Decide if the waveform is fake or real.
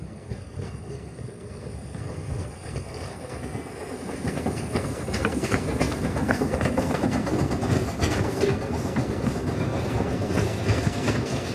fake